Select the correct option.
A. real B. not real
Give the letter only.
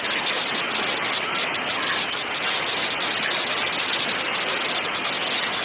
A